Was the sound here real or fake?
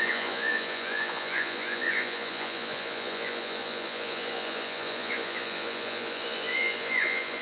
fake